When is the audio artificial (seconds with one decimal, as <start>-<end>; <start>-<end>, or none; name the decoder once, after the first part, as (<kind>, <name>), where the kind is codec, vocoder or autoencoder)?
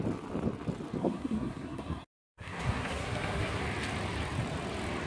1.0-3.6 (codec, SNAC)